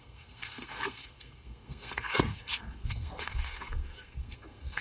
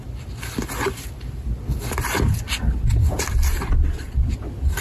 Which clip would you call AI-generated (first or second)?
first